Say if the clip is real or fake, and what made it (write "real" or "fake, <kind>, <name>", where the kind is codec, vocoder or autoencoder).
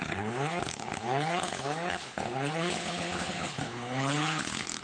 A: fake, codec, HILCodec